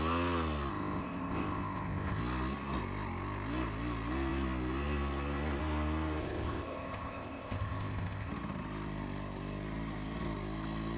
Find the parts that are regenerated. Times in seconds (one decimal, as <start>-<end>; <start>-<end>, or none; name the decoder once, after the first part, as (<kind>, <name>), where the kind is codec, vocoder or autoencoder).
0.7-2.2 (codec, ZipCodec); 6.2-8.3